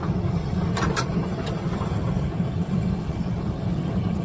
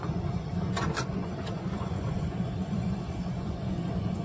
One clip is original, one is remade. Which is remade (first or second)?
second